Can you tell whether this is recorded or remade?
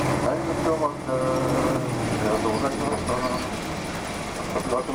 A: recorded